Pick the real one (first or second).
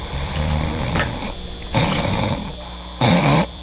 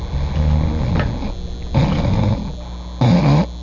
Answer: second